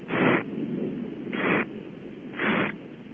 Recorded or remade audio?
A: recorded